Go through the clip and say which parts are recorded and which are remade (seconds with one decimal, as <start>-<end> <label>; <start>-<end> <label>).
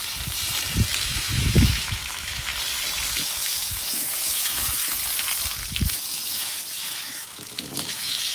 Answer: 0.0-0.9 recorded; 0.9-2.5 remade; 2.5-3.1 recorded; 3.1-5.0 remade; 5.0-5.7 recorded; 5.7-8.3 remade